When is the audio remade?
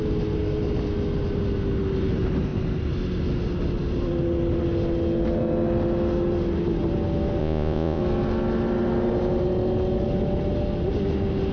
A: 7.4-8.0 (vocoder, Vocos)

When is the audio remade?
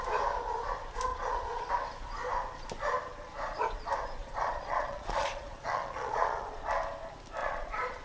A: 1.1-1.7 (vocoder, Vocos); 4.2-6.7; 7.4-8.0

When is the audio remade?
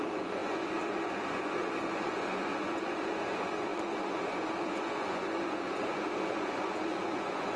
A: 0.0-7.6 (vocoder, Vocos)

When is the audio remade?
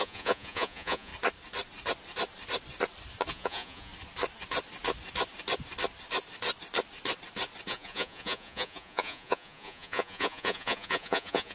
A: 0.0-1.1 (vocoder, Vocos); 3.3-3.9; 7.7-11.5